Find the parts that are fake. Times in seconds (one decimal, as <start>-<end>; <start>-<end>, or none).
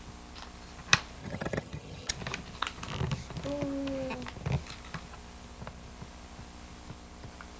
1.2-2.1